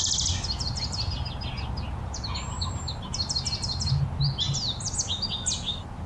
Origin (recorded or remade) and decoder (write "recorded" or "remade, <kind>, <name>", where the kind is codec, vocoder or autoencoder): recorded